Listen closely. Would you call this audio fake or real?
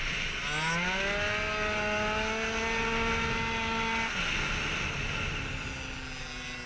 real